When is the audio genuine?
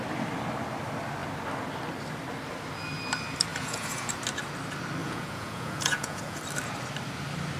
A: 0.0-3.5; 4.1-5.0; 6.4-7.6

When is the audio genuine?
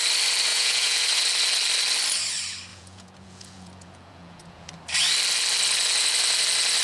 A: 0.0-0.5; 1.2-2.7; 4.7-6.8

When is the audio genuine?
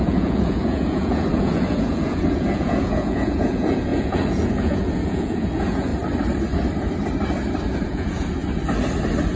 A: 5.9-7.7; 8.4-9.4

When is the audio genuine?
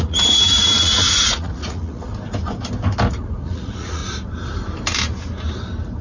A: 2.1-3.1; 4.0-6.0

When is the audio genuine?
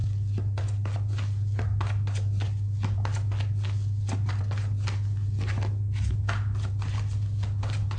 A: 0.0-8.0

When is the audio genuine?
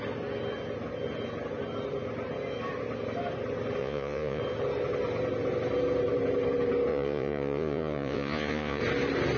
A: 0.0-3.8; 4.4-6.9; 8.8-9.4